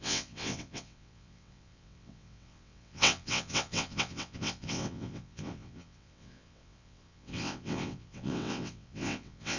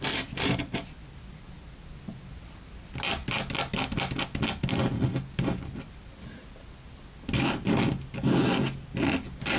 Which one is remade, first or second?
first